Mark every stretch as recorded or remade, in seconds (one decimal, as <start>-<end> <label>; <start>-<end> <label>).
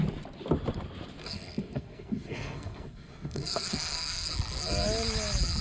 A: 0.0-1.2 recorded; 1.2-4.3 remade; 4.3-5.6 recorded